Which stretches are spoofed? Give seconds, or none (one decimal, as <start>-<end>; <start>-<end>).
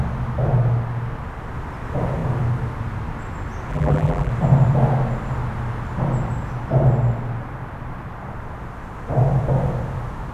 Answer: 3.7-4.3